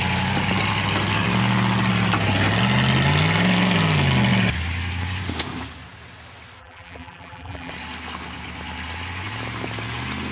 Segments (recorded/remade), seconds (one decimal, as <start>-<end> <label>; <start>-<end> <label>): 0.0-6.6 recorded; 6.6-7.7 remade; 7.7-10.3 recorded

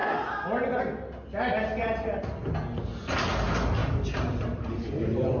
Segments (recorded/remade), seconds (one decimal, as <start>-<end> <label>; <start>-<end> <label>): 0.0-3.8 recorded; 3.8-5.4 remade

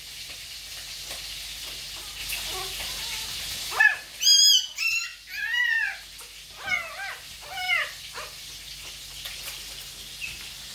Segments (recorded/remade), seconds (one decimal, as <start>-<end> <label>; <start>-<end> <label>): 0.0-10.7 recorded

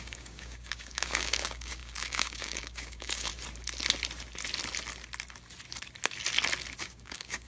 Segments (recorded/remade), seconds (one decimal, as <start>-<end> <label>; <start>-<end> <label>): 0.0-3.3 remade; 3.3-6.8 recorded; 6.8-7.5 remade

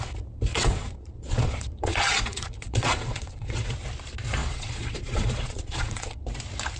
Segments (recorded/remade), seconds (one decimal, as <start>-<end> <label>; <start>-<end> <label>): 0.0-0.5 recorded; 0.5-3.7 remade; 3.7-4.4 recorded; 4.4-6.2 remade; 6.2-6.8 recorded

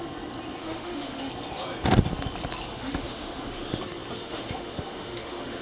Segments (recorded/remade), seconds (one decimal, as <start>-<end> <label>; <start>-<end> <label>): 0.0-0.6 recorded; 0.6-1.3 remade; 1.3-2.7 recorded; 2.7-3.8 remade; 3.8-4.2 recorded; 4.2-5.6 remade

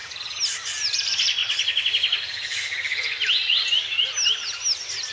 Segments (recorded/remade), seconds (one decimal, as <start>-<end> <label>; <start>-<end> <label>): 0.0-5.1 recorded